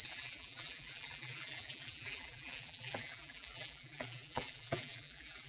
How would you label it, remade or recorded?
remade